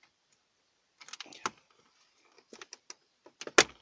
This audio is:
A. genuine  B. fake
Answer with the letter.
A